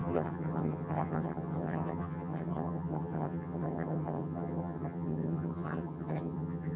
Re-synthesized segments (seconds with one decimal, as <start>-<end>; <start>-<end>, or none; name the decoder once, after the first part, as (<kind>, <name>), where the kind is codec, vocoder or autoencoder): 0.0-6.8 (vocoder, HiFi-GAN)